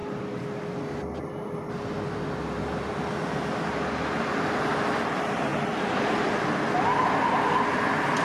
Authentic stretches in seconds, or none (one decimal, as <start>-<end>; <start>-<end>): 0.0-8.2